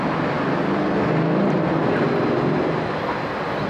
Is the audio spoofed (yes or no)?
no